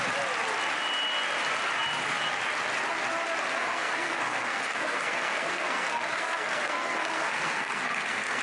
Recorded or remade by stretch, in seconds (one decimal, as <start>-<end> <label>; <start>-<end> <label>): 0.0-3.6 recorded; 3.6-8.4 remade